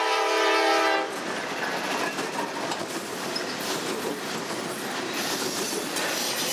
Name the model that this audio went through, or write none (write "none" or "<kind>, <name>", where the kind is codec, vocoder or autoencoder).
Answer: none